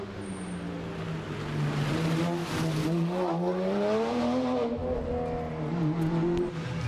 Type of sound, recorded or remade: recorded